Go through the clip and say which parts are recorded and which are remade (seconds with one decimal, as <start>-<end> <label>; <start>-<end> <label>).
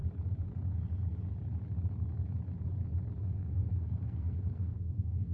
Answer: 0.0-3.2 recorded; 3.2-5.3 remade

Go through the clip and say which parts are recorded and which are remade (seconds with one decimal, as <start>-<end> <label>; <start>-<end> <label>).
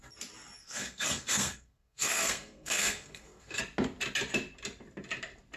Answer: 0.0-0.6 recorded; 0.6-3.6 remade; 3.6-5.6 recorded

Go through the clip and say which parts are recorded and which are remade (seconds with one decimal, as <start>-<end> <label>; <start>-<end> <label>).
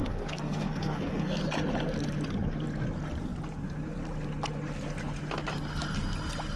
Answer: 0.0-1.4 remade; 1.4-6.6 recorded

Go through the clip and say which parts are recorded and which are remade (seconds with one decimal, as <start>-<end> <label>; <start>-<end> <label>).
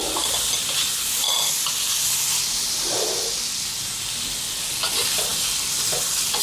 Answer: 0.0-6.4 recorded